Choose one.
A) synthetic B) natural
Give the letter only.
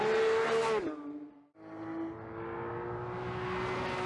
B